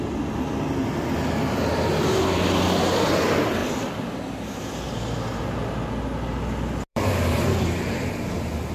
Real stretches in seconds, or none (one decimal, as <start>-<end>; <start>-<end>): 0.0-3.6; 4.6-6.9